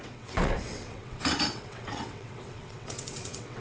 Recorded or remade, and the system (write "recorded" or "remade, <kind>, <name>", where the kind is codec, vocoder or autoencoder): remade, vocoder, WaveNeXt